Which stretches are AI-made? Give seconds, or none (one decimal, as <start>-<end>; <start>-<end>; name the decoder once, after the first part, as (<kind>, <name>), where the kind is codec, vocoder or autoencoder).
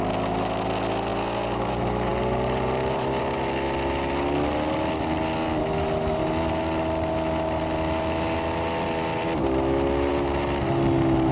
2.1-3.2 (vocoder, BigVGAN v2)